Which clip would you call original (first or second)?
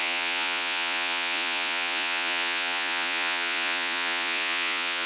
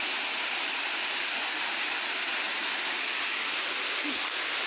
second